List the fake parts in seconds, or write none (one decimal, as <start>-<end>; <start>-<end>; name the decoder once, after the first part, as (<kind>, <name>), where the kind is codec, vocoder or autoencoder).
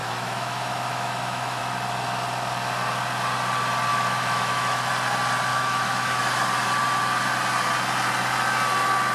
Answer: 0.0-1.6 (autoencoder, DAC-VAE); 3.9-4.9; 5.5-6.2